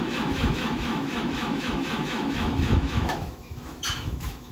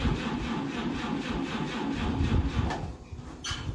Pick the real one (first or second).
second